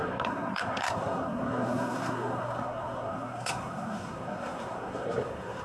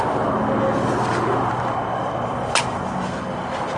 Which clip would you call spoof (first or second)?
first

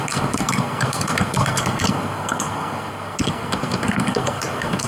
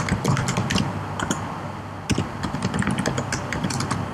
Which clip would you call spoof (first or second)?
first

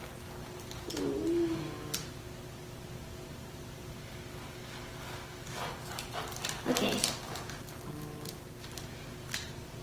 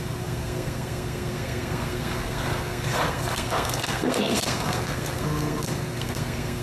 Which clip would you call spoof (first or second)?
second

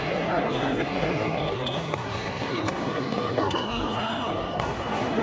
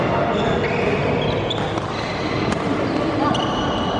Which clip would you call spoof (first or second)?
first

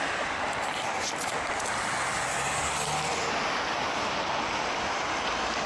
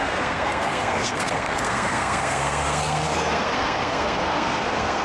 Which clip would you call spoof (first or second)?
second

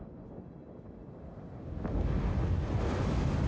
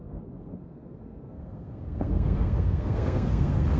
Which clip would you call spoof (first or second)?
second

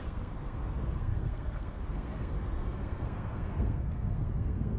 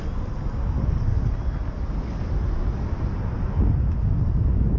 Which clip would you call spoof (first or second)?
first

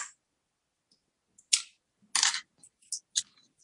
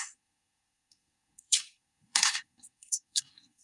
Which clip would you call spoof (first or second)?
second